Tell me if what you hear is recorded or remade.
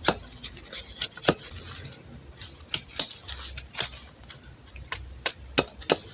recorded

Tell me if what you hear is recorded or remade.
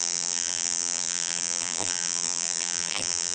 remade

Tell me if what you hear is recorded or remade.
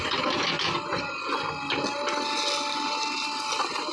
recorded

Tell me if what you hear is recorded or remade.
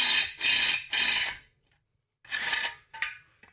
recorded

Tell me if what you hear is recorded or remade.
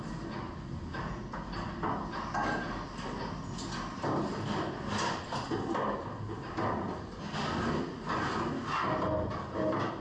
recorded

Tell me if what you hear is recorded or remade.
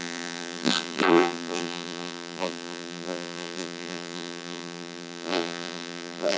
remade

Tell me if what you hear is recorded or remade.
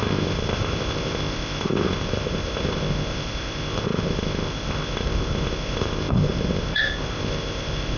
remade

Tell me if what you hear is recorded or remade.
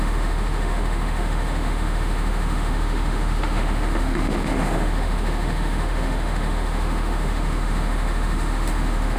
remade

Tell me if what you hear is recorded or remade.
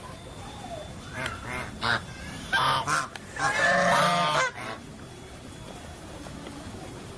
recorded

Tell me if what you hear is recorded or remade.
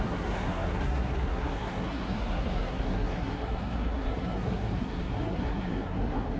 remade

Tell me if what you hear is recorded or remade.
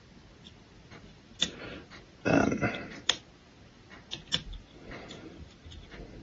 remade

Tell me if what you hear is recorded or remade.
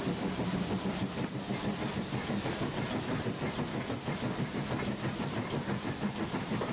recorded